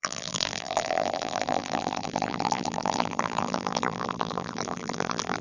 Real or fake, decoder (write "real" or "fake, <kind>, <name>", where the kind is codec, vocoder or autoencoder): fake, vocoder, BigVGAN v2